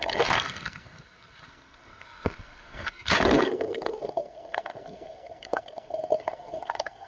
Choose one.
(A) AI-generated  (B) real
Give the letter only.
A